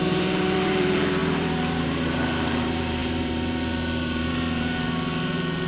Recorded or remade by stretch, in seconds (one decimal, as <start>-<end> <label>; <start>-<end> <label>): 0.0-5.7 remade